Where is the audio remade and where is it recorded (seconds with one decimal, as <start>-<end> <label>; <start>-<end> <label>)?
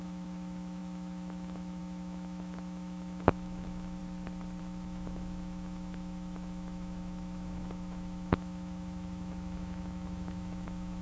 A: 0.0-4.0 remade; 4.0-4.6 recorded; 4.6-11.0 remade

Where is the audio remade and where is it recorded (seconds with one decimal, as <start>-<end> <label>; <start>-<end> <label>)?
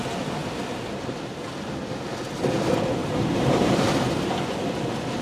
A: 0.0-3.0 recorded; 3.0-4.4 remade; 4.4-5.2 recorded